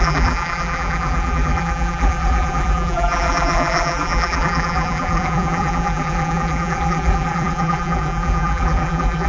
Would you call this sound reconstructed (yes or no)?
yes